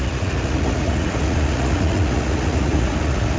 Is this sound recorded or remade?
remade